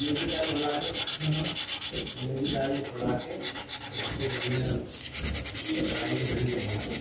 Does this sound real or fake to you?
real